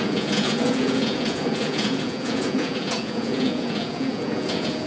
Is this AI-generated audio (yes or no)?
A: yes